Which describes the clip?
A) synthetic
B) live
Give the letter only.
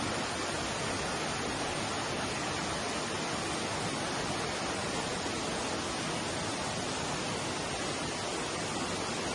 B